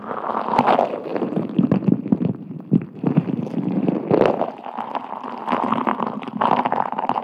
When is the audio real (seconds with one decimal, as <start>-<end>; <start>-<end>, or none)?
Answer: 0.0-1.1; 4.0-5.9